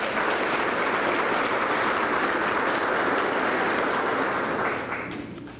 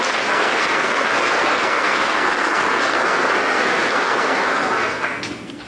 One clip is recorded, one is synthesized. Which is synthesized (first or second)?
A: second